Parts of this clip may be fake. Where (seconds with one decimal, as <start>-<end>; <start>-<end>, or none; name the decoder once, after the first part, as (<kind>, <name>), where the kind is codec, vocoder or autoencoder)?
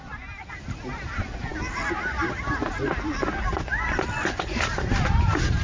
none